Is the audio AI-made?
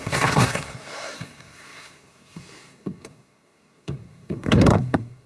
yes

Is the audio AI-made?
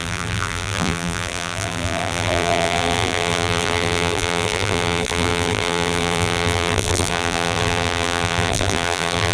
yes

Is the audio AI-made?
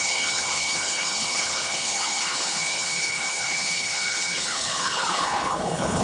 yes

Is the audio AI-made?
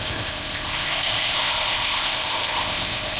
yes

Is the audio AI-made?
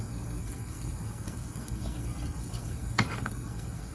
yes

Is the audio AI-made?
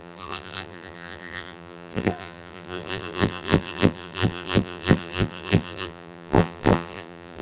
yes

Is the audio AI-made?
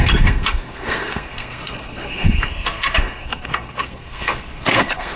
yes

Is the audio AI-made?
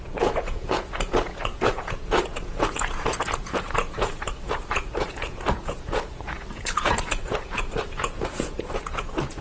yes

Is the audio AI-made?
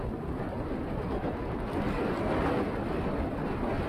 no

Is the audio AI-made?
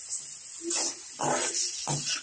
no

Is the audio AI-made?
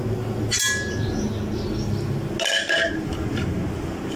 no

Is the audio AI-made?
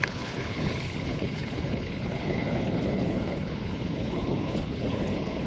yes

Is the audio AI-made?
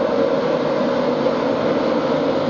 no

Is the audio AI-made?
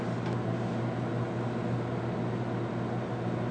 no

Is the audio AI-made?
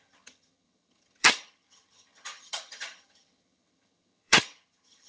yes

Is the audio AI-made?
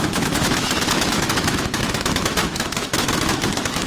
yes